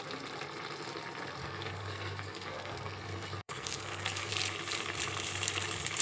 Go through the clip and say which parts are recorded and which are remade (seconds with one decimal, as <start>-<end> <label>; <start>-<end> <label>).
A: 0.0-1.4 recorded; 1.4-4.3 remade; 4.3-6.0 recorded

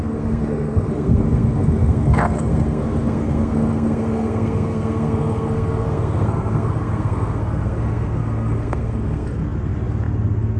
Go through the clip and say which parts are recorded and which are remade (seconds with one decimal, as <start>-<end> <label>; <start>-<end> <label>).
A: 0.0-9.4 remade; 9.4-10.6 recorded

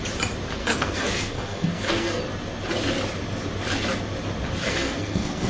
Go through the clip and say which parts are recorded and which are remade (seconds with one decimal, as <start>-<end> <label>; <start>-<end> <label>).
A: 0.0-0.6 recorded; 0.6-2.2 remade; 2.2-4.6 recorded; 4.6-5.5 remade

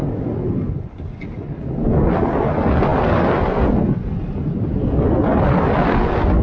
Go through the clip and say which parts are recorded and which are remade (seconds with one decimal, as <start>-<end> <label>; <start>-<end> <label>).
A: 0.0-6.4 recorded

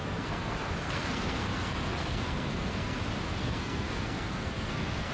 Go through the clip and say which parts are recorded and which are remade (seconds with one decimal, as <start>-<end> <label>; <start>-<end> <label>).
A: 0.0-3.0 remade; 3.0-3.4 recorded; 3.4-5.1 remade

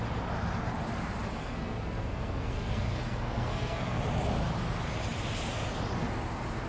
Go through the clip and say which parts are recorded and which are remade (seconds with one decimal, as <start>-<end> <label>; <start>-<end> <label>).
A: 0.0-1.4 recorded; 1.4-4.0 remade; 4.0-6.7 recorded

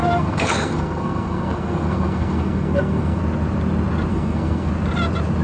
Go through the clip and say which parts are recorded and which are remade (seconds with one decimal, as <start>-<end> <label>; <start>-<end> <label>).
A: 0.0-3.2 remade; 3.2-4.1 recorded; 4.1-4.7 remade; 4.7-5.4 recorded

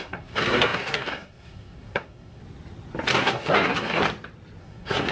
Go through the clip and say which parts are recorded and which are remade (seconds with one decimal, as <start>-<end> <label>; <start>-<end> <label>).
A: 0.0-2.4 remade; 2.4-3.2 recorded; 3.2-4.0 remade; 4.0-4.6 recorded; 4.6-5.1 remade